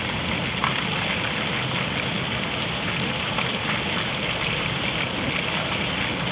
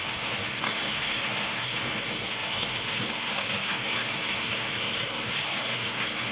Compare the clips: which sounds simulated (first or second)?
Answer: second